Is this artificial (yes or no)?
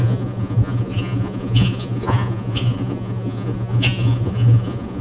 yes